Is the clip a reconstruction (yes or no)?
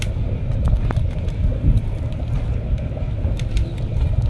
no